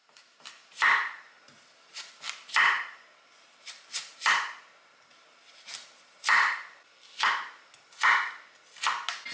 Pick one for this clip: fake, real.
real